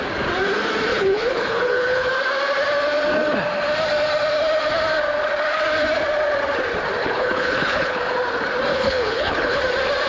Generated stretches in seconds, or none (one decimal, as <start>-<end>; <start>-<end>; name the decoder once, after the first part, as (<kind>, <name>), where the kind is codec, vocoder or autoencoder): 0.9-2.1 (codec, HILCodec); 7.0-8.0; 8.7-9.6